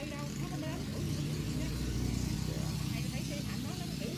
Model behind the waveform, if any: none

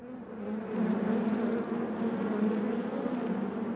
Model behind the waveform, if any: none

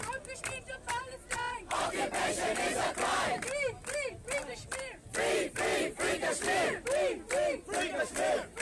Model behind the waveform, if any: none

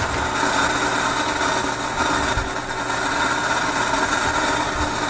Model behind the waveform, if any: none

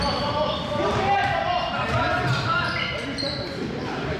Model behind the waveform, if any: none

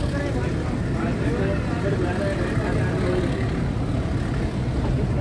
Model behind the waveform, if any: none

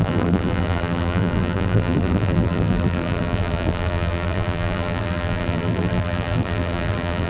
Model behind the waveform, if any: vocoder, BigVGAN v2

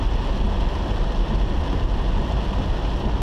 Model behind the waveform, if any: none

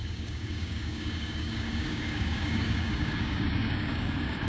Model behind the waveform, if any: codec, DAC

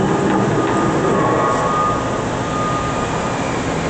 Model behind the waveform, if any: none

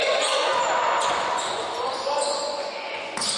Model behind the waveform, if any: vocoder, Vocos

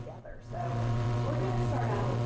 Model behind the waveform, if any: vocoder, WaveNeXt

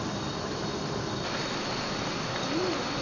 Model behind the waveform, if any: none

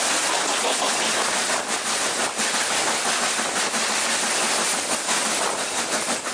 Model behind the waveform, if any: none